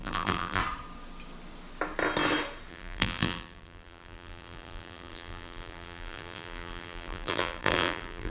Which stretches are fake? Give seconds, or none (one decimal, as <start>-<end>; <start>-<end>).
0.0-0.6; 2.7-8.3